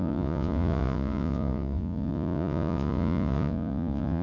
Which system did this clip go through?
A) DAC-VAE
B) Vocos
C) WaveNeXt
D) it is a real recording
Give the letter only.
B